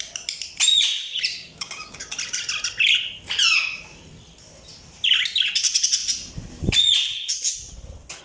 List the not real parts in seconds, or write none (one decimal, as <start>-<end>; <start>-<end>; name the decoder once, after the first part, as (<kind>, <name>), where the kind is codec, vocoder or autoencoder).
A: 1.3-2.1 (codec, DAC)